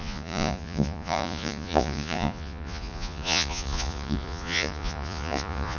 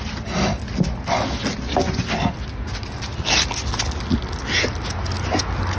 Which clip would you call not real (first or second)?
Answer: first